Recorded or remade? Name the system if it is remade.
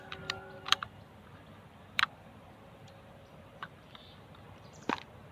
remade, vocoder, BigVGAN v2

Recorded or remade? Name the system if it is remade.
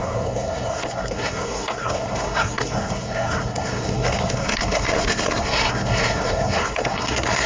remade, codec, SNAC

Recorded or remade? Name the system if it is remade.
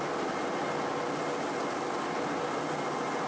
recorded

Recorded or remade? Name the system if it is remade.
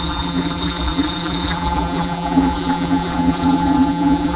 remade, vocoder, BigVGAN v2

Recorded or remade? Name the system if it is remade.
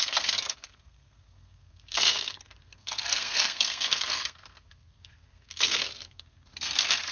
remade, codec, SNAC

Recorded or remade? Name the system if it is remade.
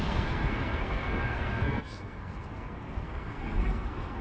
remade, codec, SNAC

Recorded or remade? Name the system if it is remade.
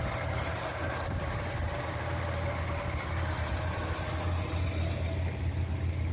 recorded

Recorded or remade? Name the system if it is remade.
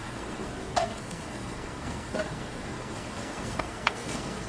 remade, codec, SNAC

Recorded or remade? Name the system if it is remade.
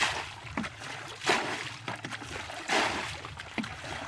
recorded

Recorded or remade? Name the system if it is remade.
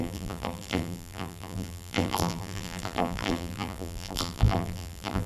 remade, vocoder, BigVGAN v2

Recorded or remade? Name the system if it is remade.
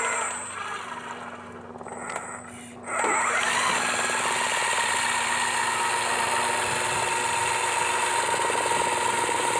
recorded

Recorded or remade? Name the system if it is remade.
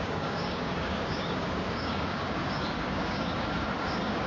remade, codec, DAC